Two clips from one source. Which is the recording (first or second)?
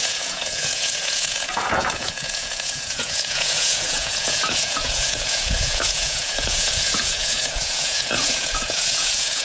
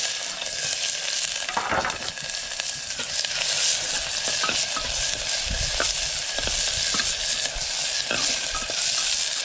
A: second